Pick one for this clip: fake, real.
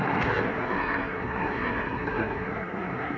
fake